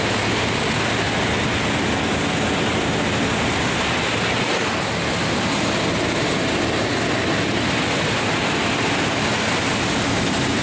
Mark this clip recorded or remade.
recorded